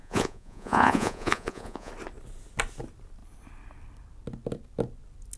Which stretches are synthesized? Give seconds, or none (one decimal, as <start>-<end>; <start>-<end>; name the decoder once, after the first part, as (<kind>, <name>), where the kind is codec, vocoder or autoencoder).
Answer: 0.0-1.9 (vocoder, Vocos)